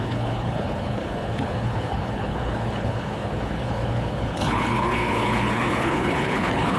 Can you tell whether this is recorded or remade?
remade